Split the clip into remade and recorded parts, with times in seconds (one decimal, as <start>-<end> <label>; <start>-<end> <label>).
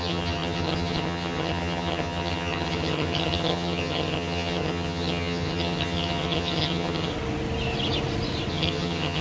0.0-7.1 remade; 7.1-8.5 recorded; 8.5-9.2 remade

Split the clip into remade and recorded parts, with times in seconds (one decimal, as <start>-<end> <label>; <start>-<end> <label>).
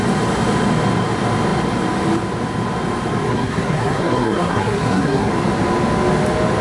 0.0-3.3 recorded; 3.3-5.3 remade; 5.3-6.6 recorded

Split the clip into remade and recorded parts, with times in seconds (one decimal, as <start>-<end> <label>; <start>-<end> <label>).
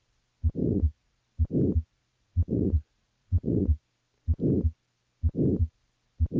0.0-0.6 recorded; 0.6-1.2 remade; 1.2-1.9 recorded; 1.9-3.8 remade; 3.8-6.4 recorded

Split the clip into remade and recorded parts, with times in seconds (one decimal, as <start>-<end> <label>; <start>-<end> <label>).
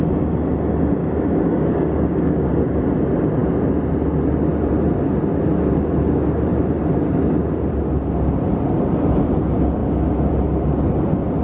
0.0-1.0 recorded; 1.0-2.5 remade; 2.5-11.4 recorded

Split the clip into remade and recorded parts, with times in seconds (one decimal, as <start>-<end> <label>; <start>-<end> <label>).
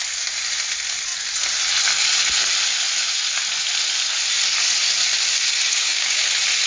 0.0-5.7 recorded; 5.7-6.2 remade; 6.2-6.7 recorded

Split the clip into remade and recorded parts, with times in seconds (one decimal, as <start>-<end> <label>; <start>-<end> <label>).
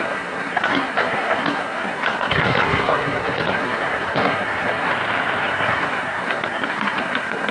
0.0-4.9 remade; 4.9-5.4 recorded; 5.4-7.5 remade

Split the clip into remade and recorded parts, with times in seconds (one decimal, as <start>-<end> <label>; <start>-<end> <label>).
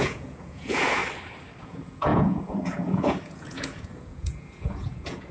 0.0-1.0 remade; 1.0-1.6 recorded; 1.6-5.3 remade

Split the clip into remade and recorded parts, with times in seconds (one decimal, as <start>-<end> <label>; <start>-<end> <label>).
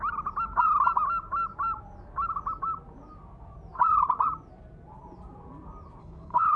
0.0-6.0 recorded; 6.0-6.6 remade